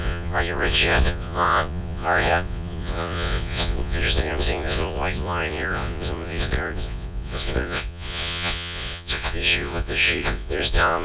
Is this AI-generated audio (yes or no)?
yes